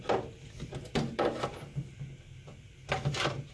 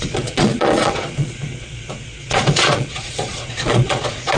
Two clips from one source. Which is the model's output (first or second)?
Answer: second